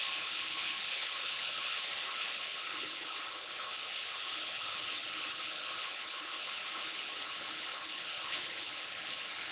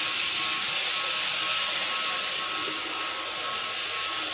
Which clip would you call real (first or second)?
second